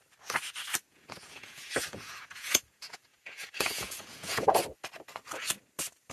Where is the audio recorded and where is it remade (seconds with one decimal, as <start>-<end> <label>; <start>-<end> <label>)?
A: 0.0-0.9 recorded; 0.9-4.6 remade; 4.6-6.1 recorded